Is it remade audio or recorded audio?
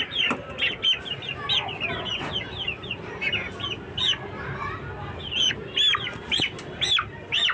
recorded